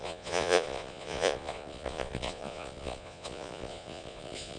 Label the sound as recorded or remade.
remade